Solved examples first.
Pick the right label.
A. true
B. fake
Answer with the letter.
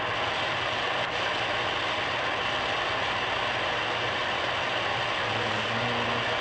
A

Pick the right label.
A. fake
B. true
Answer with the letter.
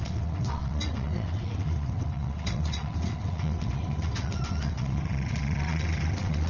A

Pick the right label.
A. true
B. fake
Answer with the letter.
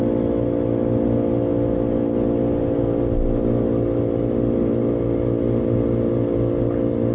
A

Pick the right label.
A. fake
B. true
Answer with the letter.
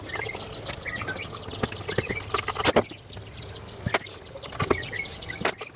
B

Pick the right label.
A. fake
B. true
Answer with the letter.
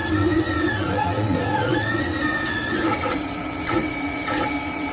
A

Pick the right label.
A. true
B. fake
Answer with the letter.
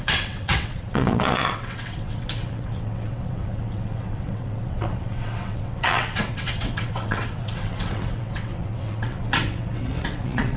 B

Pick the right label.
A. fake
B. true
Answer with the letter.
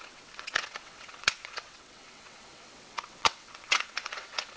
A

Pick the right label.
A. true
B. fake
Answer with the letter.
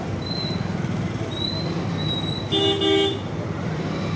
A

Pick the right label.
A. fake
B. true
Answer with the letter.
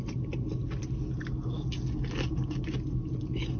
B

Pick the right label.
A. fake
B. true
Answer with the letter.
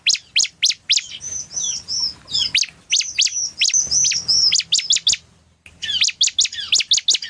B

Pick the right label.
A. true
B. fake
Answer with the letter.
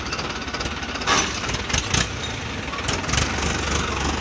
A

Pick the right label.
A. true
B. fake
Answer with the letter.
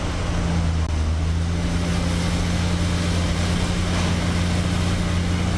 A